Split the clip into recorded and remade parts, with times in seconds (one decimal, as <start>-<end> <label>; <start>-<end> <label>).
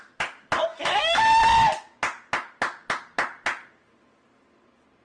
0.0-0.7 recorded; 0.7-1.2 remade; 1.2-5.0 recorded